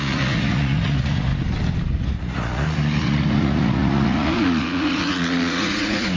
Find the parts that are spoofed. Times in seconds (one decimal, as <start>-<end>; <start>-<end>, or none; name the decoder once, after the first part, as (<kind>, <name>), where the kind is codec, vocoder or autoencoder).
0.0-1.3 (vocoder, Vocos); 2.0-6.2